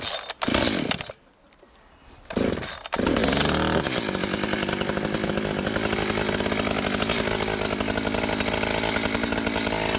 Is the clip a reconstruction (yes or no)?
no